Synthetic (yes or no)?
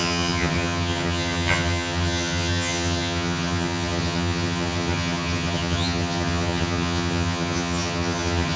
yes